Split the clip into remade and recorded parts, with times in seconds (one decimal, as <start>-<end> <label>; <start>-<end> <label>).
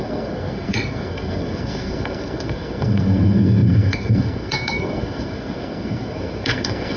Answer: 0.0-7.0 remade